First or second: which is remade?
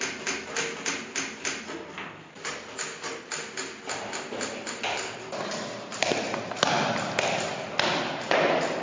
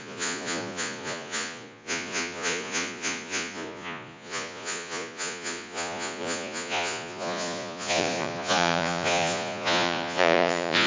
second